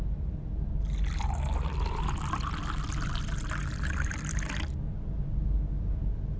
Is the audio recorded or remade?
recorded